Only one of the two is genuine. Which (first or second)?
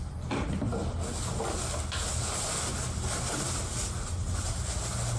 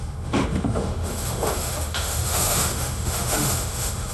first